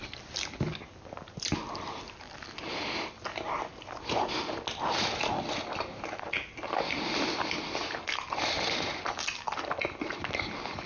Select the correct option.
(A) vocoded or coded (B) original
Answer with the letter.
B